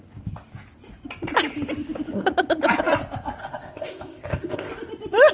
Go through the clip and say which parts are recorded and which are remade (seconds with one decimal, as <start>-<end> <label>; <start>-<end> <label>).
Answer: 0.0-3.4 recorded; 3.4-4.7 remade; 4.7-5.3 recorded